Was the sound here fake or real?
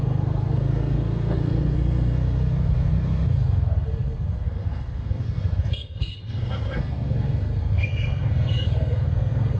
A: fake